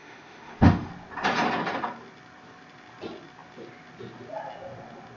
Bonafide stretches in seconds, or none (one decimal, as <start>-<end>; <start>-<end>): 0.9-5.2